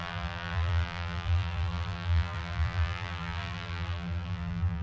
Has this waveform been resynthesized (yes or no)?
yes